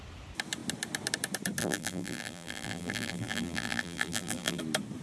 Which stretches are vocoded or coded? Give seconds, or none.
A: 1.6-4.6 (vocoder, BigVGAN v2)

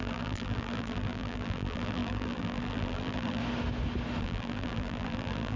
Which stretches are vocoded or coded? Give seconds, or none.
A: 0.0-3.4 (vocoder, BigVGAN v2); 4.2-5.6

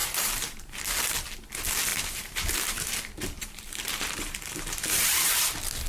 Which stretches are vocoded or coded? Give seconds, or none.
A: 0.0-0.8 (vocoder, BigVGAN v2); 1.9-5.4

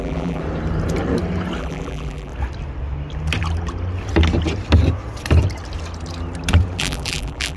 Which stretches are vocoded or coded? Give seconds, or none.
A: 0.0-0.4 (vocoder, BigVGAN v2); 1.6-2.3; 6.8-7.6